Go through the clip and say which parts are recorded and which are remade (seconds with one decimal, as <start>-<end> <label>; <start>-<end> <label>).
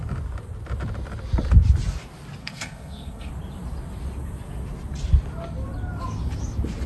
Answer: 0.0-2.4 recorded; 2.4-3.3 remade; 3.3-6.9 recorded